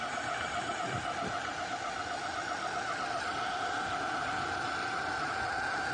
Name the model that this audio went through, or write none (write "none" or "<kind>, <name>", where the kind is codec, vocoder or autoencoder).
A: none